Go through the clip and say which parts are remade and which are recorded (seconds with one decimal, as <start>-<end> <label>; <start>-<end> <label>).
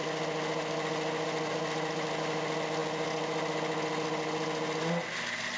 0.0-5.6 recorded